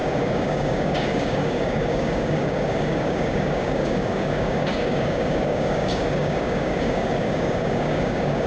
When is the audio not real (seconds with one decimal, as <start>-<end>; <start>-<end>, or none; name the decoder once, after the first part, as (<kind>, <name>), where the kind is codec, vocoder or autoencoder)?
0.0-8.5 (codec, DAC)